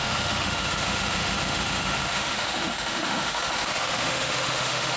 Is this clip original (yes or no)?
no